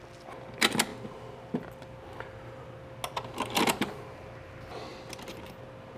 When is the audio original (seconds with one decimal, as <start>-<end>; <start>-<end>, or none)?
0.0-6.0